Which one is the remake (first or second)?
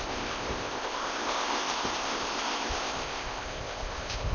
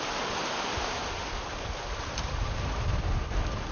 first